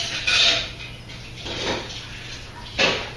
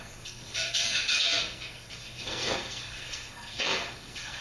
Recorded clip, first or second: first